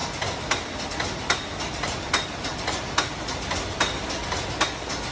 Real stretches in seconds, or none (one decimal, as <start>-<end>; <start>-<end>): 0.0-5.1